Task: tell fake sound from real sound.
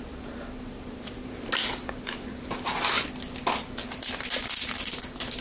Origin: real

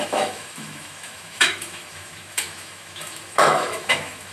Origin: fake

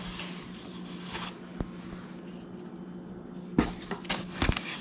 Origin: real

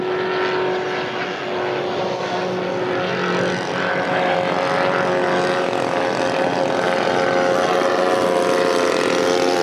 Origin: real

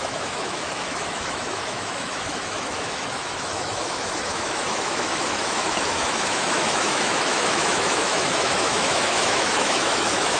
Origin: fake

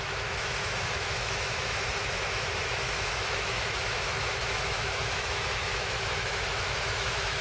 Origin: fake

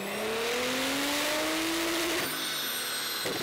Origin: real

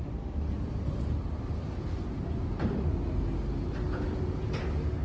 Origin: real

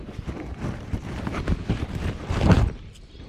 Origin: real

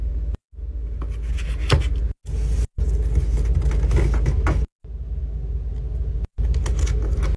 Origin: real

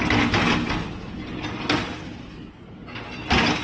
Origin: real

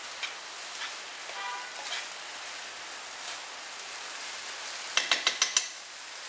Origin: real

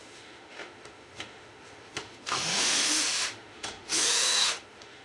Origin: fake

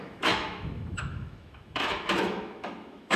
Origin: fake